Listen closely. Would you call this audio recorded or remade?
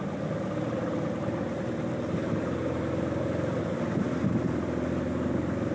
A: recorded